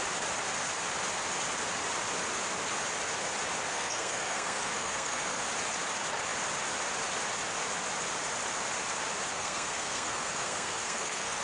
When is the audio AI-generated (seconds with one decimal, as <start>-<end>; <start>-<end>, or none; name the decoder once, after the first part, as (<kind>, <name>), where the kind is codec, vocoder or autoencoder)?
3.7-5.4 (codec, SNAC); 9.3-11.4